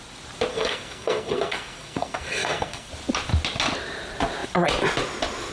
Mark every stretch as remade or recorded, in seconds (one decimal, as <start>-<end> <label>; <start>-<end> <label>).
0.0-0.5 recorded; 0.5-2.9 remade; 2.9-5.5 recorded